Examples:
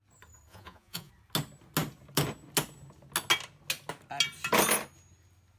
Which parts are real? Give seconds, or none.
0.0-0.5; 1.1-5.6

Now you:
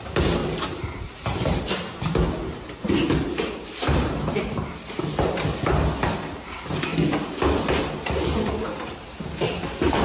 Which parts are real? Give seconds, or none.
6.9-7.8